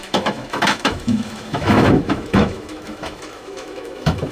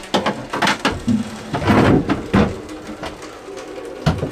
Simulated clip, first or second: first